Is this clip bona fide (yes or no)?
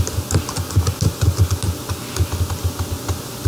yes